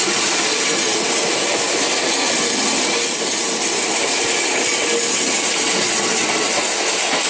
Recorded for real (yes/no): yes